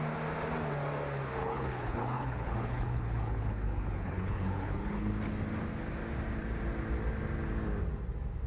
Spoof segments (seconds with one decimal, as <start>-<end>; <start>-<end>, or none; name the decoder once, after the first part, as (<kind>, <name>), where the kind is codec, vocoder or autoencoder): 1.4-5.1 (codec, HILCodec)